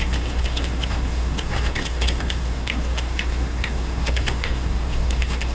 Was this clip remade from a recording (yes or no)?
yes